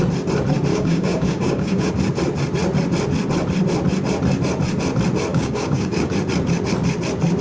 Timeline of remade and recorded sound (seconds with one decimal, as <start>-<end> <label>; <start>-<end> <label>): 0.0-0.7 recorded; 0.7-1.9 remade; 1.9-5.3 recorded; 5.3-6.1 remade; 6.1-7.4 recorded